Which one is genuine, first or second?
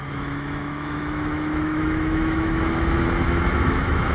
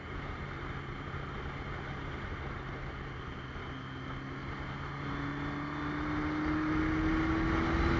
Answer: second